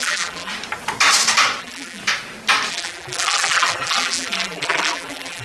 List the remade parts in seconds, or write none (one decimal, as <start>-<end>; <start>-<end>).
0.0-0.5; 1.6-2.0; 2.7-5.4